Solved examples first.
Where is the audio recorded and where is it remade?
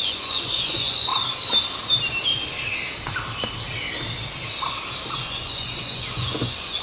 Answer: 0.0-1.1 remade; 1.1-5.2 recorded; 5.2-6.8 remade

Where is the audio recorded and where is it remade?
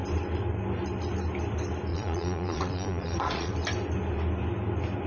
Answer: 0.0-1.9 recorded; 1.9-3.5 remade; 3.5-5.1 recorded